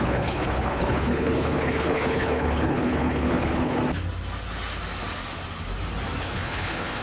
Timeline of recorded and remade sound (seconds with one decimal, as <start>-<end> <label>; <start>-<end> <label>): 0.0-3.8 remade; 3.8-6.2 recorded; 6.2-7.0 remade